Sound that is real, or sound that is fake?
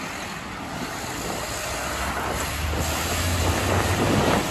real